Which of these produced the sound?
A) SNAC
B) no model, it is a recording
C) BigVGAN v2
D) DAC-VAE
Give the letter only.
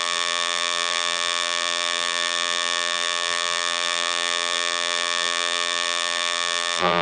C